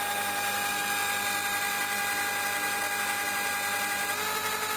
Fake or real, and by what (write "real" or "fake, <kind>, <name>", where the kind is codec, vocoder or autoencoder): real